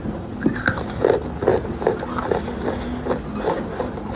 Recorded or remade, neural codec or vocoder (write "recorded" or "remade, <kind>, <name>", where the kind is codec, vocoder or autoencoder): recorded